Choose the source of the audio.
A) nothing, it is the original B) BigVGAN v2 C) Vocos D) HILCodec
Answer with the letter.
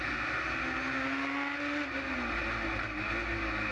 A